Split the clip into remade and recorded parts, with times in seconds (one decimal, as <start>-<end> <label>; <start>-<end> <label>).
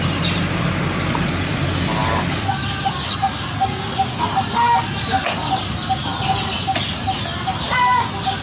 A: 0.0-8.4 recorded